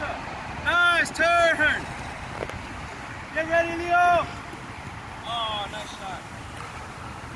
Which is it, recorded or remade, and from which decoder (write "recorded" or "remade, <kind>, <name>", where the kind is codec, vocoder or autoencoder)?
recorded